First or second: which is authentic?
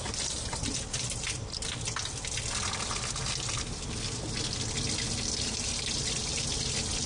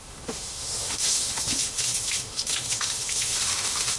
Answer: first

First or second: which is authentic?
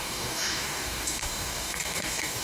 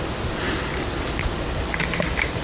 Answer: second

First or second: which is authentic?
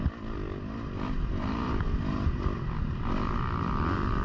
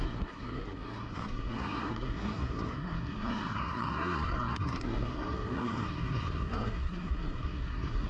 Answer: first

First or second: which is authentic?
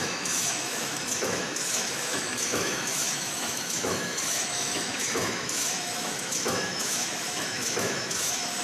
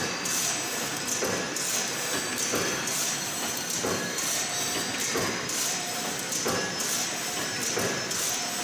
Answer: second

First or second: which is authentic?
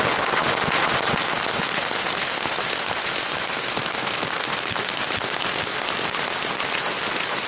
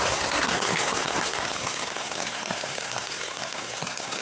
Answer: first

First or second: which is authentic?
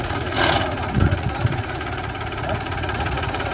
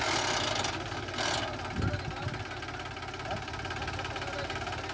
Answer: second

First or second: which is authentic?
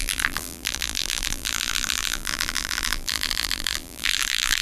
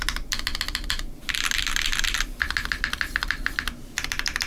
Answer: second